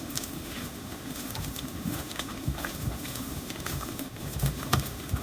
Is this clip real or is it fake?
fake